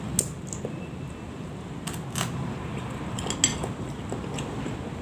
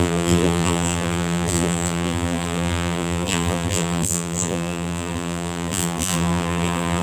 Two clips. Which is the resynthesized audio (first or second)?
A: second